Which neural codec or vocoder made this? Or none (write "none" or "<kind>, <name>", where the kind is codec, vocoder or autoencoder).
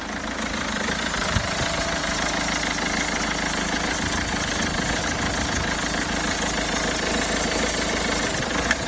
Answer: none